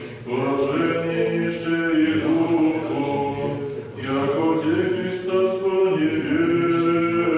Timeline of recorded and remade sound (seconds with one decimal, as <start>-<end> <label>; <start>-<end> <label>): 0.0-0.6 recorded; 0.6-4.4 remade; 4.4-5.8 recorded; 5.8-7.4 remade